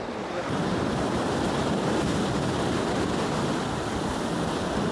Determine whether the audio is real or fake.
fake